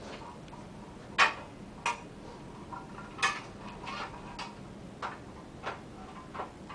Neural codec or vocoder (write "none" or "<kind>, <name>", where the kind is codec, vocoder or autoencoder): none